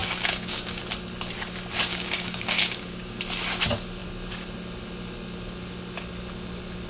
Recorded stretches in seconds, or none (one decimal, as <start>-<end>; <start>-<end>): 0.8-1.9; 3.2-6.9